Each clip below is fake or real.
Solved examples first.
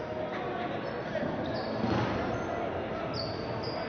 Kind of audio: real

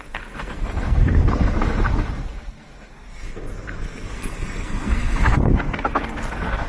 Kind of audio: fake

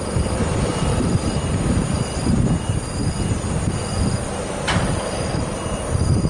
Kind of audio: fake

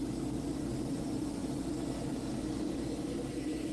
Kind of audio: real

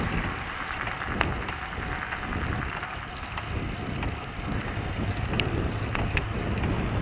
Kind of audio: real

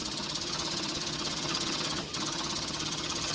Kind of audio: fake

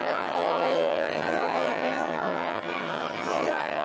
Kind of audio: fake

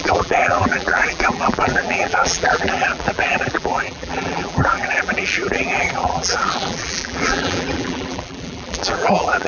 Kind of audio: fake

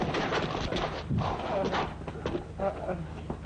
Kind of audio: real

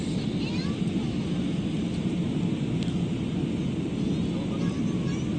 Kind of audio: real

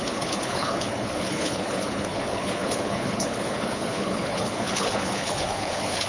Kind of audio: fake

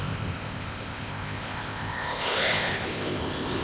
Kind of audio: fake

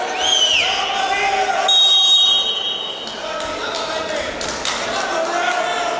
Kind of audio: real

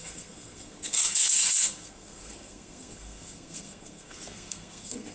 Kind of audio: fake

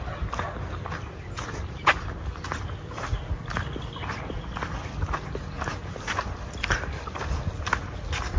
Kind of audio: real